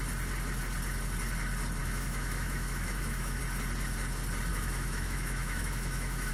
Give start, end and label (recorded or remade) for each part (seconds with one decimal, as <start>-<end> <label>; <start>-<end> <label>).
0.0-1.8 recorded; 1.8-3.4 remade; 3.4-4.5 recorded; 4.5-6.3 remade